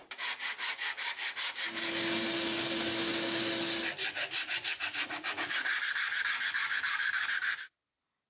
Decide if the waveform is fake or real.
real